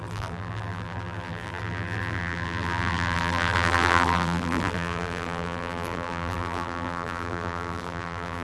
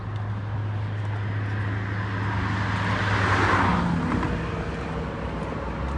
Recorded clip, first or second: second